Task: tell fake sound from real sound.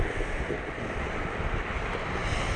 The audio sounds real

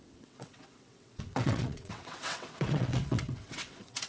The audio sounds fake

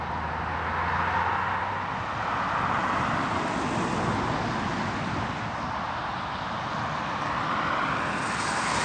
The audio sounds real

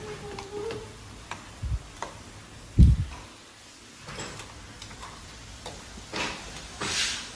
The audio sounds real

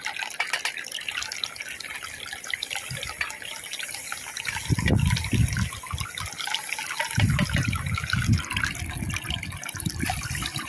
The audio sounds real